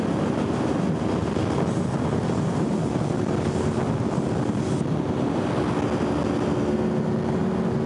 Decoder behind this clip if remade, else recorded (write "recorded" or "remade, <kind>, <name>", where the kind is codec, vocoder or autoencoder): recorded